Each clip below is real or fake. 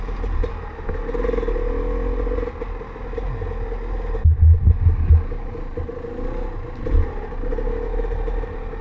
real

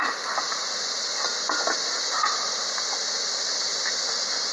real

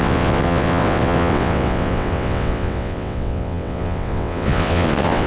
fake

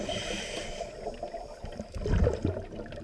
real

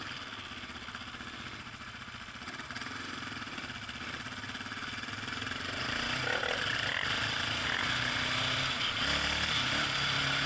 real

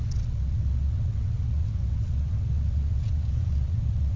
fake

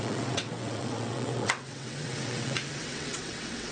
fake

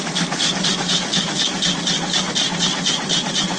real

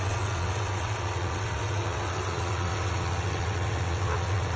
fake